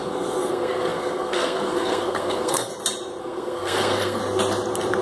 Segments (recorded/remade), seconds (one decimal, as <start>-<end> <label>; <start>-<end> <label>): 0.0-2.7 remade; 2.7-3.2 recorded; 3.2-4.2 remade; 4.2-5.0 recorded